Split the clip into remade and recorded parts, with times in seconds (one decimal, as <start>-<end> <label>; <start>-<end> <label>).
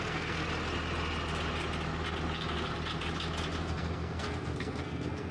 0.0-0.4 remade; 0.4-3.6 recorded; 3.6-5.3 remade